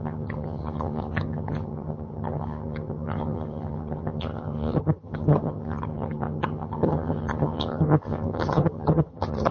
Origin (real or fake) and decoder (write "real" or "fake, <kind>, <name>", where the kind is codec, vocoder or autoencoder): fake, vocoder, HiFi-GAN